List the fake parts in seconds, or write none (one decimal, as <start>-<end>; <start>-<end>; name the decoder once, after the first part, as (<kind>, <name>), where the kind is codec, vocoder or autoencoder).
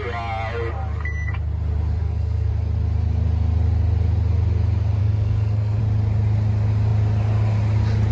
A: 2.0-2.5 (codec, SNAC); 5.0-5.8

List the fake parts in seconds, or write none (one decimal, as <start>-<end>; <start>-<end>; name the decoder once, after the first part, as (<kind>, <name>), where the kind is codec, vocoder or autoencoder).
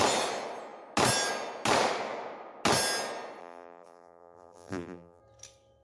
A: 3.4-5.2 (vocoder, BigVGAN v2)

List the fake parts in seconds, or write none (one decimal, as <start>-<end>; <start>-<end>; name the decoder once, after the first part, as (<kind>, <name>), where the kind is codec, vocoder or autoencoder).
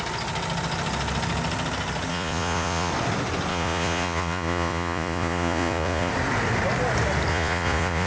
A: 2.1-2.9 (vocoder, Vocos); 3.5-6.1; 7.3-8.1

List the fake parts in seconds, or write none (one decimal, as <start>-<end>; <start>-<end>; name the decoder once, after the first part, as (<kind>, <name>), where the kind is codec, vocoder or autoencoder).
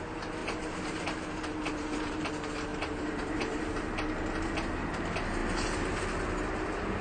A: 0.4-2.3 (vocoder, BigVGAN v2); 2.7-3.6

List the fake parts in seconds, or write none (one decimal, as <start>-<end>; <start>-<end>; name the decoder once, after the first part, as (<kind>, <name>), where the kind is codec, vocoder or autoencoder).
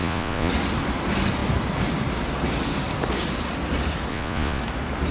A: 0.0-0.5 (vocoder, Vocos); 4.1-4.6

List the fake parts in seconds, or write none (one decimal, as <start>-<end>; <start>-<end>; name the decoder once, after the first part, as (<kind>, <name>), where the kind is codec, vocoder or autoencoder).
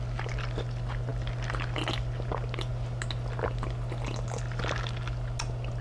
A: none